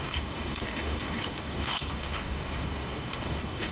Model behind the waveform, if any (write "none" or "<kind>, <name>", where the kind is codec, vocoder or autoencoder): codec, DAC